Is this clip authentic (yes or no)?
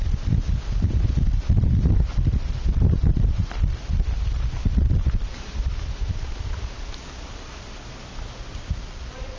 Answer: yes